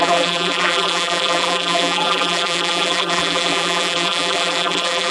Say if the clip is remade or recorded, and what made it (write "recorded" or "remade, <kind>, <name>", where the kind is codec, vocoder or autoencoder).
remade, vocoder, BigVGAN v2